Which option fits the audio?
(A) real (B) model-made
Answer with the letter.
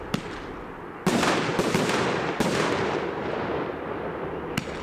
A